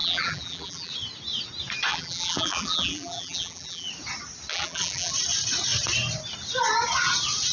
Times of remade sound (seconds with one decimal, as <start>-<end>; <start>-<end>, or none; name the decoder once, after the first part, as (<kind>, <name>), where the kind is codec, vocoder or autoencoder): 0.0-0.9 (vocoder, BigVGAN v2); 1.9-3.9; 4.5-5.1